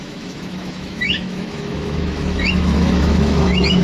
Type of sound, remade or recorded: remade